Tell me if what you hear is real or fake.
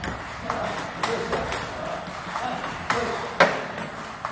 real